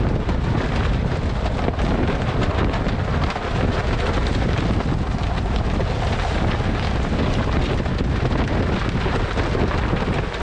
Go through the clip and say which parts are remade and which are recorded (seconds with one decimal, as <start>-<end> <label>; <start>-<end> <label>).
0.0-10.4 recorded